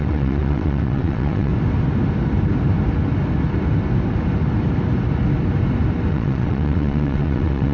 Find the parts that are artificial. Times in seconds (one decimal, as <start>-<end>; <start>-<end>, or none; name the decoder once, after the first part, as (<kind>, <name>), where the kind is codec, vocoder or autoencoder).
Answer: 0.0-1.5 (vocoder, WaveNeXt); 6.1-7.7